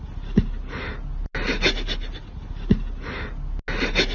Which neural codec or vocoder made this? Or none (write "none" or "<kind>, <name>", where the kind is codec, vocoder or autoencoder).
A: none